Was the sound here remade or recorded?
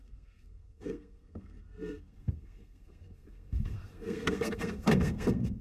remade